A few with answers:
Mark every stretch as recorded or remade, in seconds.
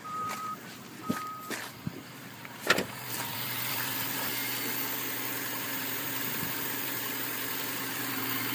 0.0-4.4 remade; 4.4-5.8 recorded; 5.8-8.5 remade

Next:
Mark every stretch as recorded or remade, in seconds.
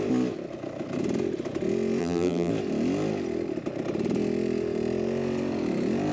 0.0-2.0 recorded; 2.0-2.5 remade; 2.5-6.1 recorded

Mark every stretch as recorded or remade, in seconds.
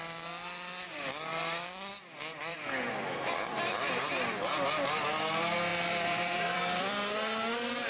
0.0-1.3 recorded; 1.3-1.9 remade; 1.9-2.5 recorded; 2.5-3.9 remade; 3.9-5.7 recorded; 5.7-6.9 remade; 6.9-7.9 recorded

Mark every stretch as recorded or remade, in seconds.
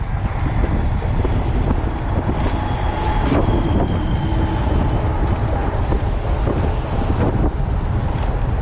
0.0-5.6 recorded; 5.6-8.6 remade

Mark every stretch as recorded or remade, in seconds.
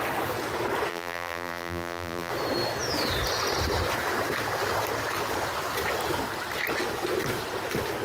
0.0-0.9 recorded; 0.9-2.3 remade; 2.3-8.0 recorded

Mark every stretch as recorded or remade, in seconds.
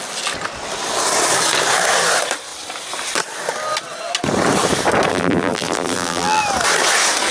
0.0-5.1 recorded; 5.1-6.4 remade; 6.4-7.3 recorded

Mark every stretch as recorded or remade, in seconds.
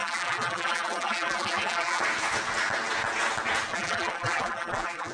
0.0-2.0 remade; 2.0-3.7 recorded; 3.7-5.1 remade